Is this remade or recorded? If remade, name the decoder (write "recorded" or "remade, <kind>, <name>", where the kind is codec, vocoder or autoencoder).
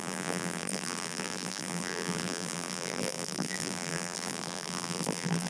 remade, vocoder, BigVGAN v2